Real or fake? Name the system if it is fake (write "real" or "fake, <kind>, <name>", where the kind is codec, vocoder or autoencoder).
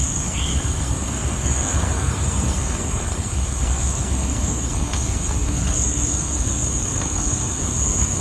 fake, codec, SNAC